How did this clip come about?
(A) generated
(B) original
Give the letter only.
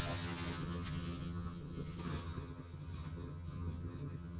A